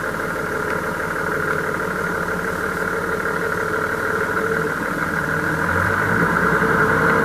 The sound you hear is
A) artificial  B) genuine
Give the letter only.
A